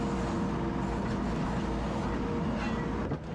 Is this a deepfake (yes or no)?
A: no